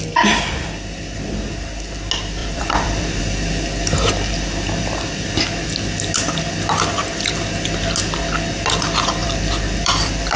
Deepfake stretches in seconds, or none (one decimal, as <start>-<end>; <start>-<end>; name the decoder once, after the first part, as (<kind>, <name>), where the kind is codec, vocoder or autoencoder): 2.4-3.2 (vocoder, BigVGAN v2); 9.2-10.4